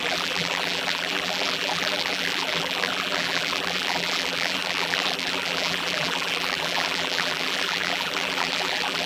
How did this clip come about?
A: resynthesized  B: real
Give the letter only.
A